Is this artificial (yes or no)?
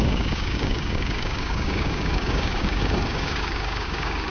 yes